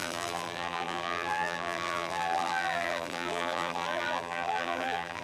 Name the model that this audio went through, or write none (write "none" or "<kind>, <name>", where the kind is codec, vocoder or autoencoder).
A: vocoder, BigVGAN v2